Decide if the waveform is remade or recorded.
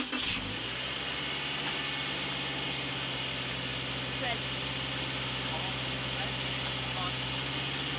recorded